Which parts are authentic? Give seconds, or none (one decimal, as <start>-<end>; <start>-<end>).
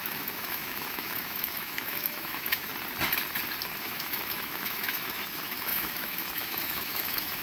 2.7-3.8